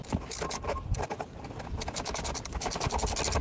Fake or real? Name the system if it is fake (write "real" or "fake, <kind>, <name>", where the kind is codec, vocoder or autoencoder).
real